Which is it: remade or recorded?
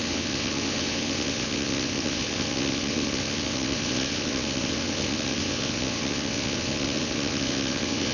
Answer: remade